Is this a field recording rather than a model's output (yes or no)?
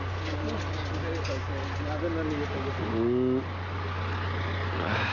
yes